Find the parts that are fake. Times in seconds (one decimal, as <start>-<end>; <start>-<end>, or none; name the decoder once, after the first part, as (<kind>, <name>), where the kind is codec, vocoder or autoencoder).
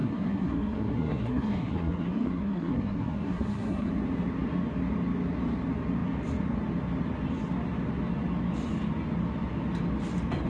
0.0-3.9 (codec, SNAC)